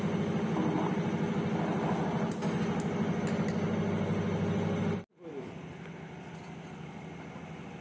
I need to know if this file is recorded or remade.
recorded